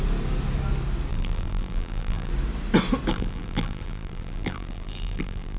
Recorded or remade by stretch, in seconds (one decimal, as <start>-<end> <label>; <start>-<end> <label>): 0.0-1.1 recorded; 1.1-2.3 remade; 2.3-3.1 recorded; 3.1-5.6 remade